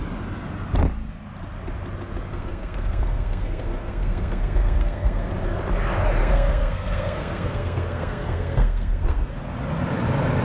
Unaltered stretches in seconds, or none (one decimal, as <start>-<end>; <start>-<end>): 0.0-2.3; 5.3-6.2; 9.3-10.4